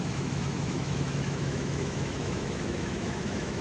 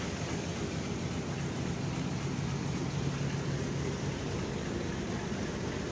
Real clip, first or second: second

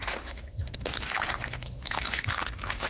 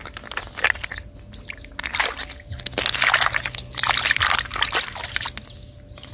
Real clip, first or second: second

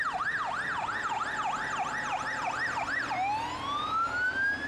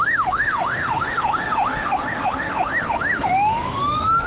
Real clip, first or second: first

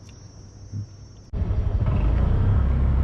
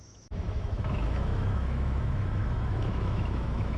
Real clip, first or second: first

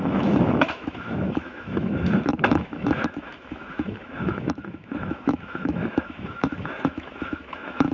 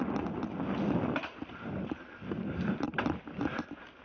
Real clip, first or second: second